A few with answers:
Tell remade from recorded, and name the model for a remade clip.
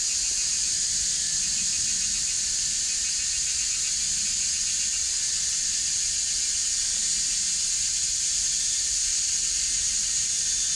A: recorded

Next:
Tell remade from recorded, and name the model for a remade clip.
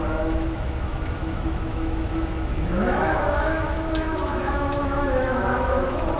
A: remade, autoencoder, DAC-VAE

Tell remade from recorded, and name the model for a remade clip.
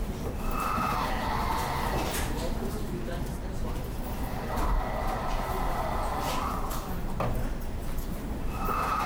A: remade, vocoder, BigVGAN v2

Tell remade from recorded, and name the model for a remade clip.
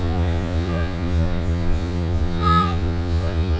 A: remade, vocoder, Vocos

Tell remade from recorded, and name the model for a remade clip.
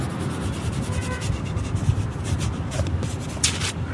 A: recorded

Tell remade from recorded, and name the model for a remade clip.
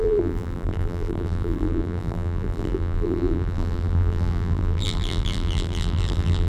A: remade, vocoder, BigVGAN v2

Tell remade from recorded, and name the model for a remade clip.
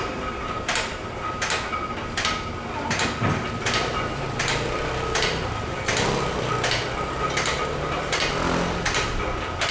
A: recorded